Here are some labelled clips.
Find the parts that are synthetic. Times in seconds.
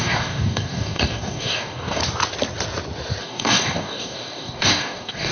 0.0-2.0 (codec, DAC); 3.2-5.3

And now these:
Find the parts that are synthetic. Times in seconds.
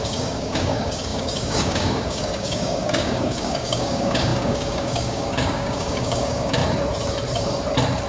0.0-6.6 (codec, DAC)